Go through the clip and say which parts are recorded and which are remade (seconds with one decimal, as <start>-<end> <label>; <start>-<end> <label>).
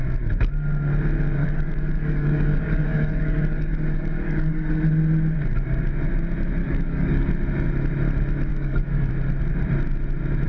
0.0-1.4 recorded; 1.4-4.7 remade; 4.7-6.6 recorded; 6.6-7.3 remade; 7.3-8.5 recorded; 8.5-9.1 remade; 9.1-10.5 recorded